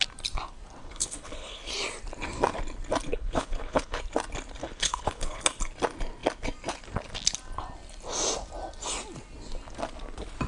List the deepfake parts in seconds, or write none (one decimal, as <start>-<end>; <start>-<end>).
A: 0.8-1.7; 3.1-4.0; 4.6-5.4